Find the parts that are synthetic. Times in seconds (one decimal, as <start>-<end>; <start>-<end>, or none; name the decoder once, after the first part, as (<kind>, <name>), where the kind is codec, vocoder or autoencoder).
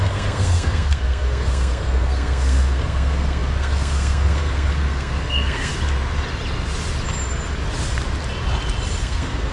0.0-5.7 (codec, SNAC); 9.0-9.5